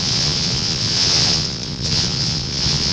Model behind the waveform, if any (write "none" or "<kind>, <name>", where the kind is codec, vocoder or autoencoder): vocoder, Vocos